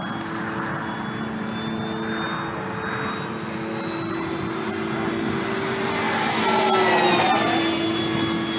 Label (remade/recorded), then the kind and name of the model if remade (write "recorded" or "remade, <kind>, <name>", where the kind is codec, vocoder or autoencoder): recorded